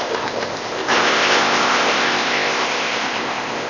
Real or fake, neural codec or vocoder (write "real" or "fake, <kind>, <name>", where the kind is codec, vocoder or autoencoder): fake, codec, ZipCodec